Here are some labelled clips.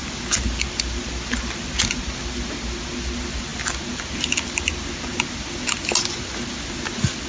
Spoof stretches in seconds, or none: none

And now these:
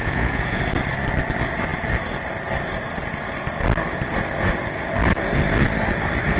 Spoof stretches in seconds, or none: 0.0-0.6 (vocoder, Vocos)

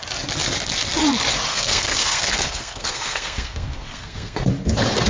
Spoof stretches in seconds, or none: 1.5-4.5 (codec, SNAC)